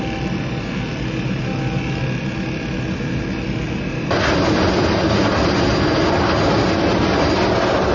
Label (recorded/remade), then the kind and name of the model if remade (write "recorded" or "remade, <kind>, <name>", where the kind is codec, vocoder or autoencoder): recorded